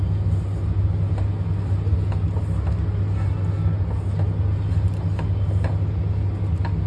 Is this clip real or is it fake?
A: real